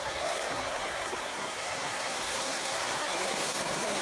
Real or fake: fake